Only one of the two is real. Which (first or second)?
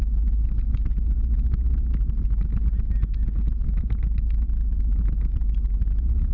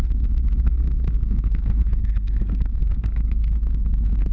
first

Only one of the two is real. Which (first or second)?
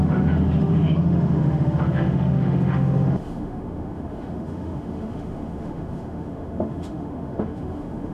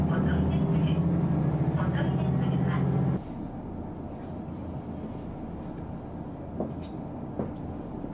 second